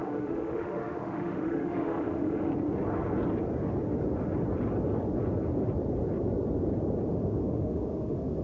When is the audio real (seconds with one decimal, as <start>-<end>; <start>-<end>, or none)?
2.5-7.1